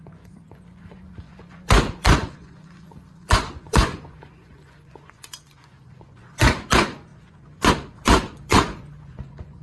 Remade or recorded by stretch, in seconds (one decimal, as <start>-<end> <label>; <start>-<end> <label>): 0.0-9.6 remade